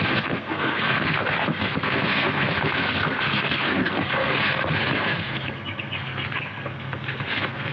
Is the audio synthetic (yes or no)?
yes